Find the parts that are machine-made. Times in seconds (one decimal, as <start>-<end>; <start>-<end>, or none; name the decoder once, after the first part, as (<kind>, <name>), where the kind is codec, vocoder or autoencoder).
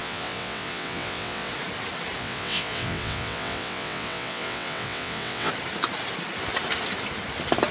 0.0-1.5 (vocoder, WaveNeXt); 2.2-5.5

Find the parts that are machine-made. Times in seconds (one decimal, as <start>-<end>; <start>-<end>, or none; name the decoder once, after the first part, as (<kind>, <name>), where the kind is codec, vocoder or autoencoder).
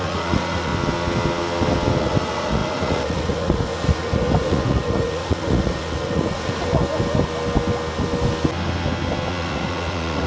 0.0-0.7 (vocoder, Vocos); 2.0-6.8; 9.3-10.3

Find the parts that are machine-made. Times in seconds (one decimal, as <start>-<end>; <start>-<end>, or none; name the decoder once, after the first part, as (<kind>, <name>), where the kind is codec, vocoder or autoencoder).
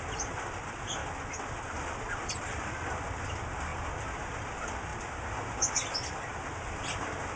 none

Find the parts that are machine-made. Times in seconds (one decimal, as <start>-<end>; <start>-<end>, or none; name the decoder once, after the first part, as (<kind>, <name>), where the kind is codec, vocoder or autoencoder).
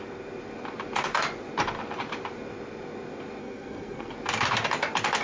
3.4-4.1 (codec, SNAC)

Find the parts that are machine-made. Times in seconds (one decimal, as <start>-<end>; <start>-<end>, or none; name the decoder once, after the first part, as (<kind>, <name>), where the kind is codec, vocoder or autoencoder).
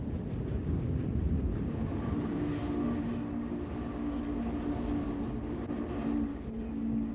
1.5-4.2 (codec, DAC); 6.3-7.1